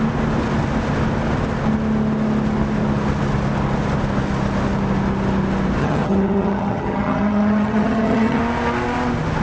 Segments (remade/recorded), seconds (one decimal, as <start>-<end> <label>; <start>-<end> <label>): 0.0-5.8 recorded; 5.8-8.4 remade; 8.4-9.4 recorded